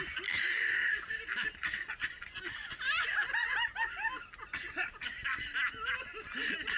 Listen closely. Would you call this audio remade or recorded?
recorded